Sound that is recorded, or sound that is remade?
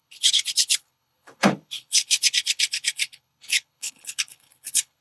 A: remade